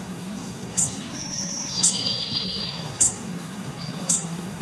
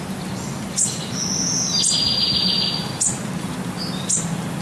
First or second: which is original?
second